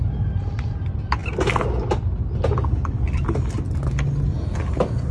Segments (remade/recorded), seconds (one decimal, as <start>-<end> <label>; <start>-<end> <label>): 0.0-5.1 recorded